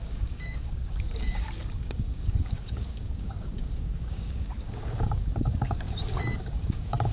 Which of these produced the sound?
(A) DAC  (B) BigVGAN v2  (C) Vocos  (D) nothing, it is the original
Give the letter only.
A